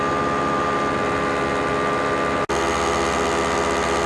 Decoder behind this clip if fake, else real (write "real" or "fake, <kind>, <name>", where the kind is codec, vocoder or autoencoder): real